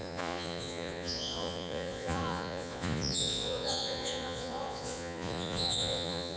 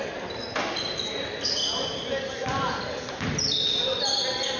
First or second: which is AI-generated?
first